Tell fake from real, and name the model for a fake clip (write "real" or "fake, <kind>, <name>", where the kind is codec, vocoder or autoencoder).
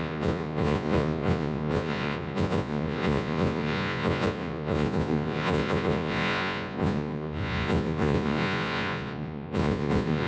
fake, vocoder, Vocos